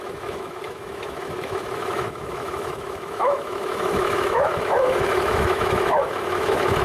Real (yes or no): no